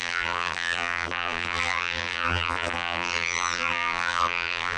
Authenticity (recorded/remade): remade